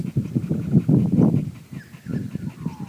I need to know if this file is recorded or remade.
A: recorded